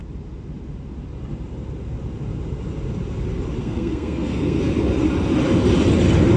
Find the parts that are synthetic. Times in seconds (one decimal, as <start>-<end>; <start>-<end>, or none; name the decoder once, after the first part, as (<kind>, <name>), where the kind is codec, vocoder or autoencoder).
3.6-4.6 (codec, SNAC)

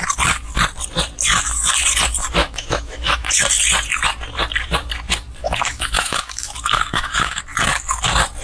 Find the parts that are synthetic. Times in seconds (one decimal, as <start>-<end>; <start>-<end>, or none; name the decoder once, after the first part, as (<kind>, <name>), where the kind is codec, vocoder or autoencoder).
2.4-3.3 (autoencoder, DAC-VAE); 5.4-7.4

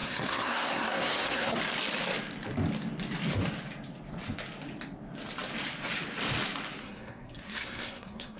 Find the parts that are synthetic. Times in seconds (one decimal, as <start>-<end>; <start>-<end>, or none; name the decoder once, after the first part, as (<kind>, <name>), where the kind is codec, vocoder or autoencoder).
0.0-1.6 (codec, SNAC); 6.8-8.4

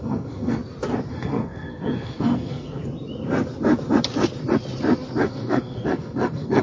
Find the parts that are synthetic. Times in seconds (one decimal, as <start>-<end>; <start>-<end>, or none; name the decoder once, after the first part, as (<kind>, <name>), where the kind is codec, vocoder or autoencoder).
0.0-0.6 (codec, SNAC); 1.1-2.8; 5.2-6.6

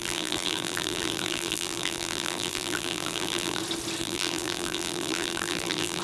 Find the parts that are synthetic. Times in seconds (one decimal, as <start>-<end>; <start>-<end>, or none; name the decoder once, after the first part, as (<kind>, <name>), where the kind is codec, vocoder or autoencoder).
0.0-3.6 (vocoder, BigVGAN v2); 4.0-6.0

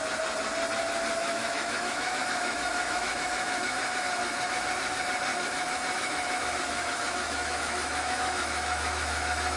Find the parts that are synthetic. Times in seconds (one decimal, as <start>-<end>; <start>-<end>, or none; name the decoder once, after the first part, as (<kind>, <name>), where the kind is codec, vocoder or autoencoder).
1.2-4.5 (autoencoder, DAC-VAE); 5.3-9.6